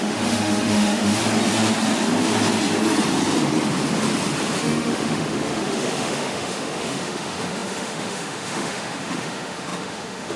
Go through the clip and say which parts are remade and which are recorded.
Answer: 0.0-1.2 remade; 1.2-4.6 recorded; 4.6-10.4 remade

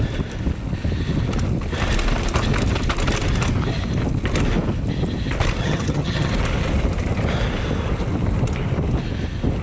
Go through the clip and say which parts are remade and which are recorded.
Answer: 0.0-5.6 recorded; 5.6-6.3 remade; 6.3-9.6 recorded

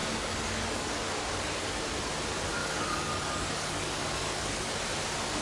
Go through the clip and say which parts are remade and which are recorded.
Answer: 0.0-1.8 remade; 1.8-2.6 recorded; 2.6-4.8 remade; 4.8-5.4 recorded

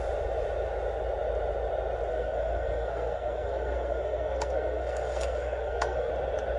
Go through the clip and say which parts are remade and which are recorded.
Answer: 0.0-2.1 recorded; 2.1-6.1 remade; 6.1-6.6 recorded

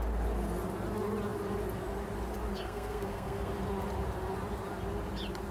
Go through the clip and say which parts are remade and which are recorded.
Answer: 0.0-2.5 recorded; 2.5-3.5 remade; 3.5-5.5 recorded

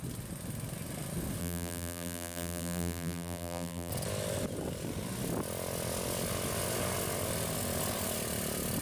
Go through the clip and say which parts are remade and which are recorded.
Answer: 0.0-1.4 recorded; 1.4-3.9 remade; 3.9-8.8 recorded

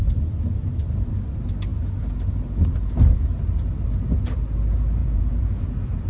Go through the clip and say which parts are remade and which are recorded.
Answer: 0.0-5.0 recorded; 5.0-5.6 remade; 5.6-6.1 recorded